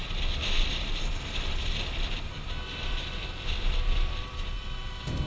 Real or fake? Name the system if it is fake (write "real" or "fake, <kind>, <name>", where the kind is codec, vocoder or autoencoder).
fake, vocoder, BigVGAN v2